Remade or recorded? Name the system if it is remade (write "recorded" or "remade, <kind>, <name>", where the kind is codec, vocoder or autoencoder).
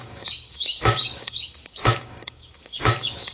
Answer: remade, codec, DAC